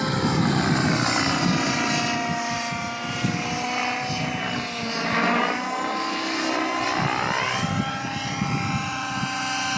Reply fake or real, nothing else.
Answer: real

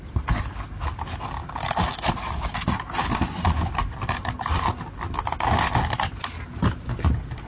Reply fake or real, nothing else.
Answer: real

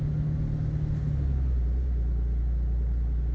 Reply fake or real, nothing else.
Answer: real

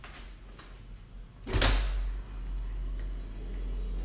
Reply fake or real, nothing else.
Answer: real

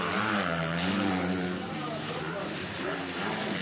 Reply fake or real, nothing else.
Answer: fake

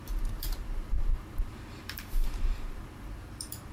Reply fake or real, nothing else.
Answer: fake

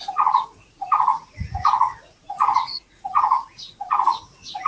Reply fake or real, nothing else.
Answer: fake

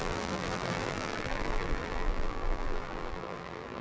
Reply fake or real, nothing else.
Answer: fake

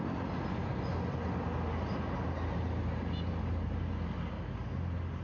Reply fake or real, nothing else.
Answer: real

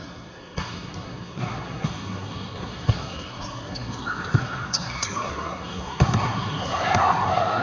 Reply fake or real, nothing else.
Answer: fake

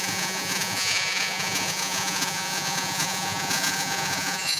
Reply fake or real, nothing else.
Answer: fake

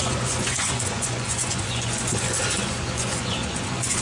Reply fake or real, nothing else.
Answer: fake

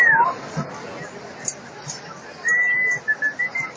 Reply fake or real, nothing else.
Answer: real